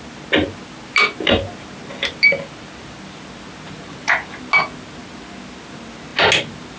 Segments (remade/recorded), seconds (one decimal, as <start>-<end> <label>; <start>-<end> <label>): 0.0-6.8 recorded